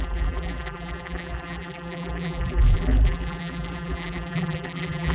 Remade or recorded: remade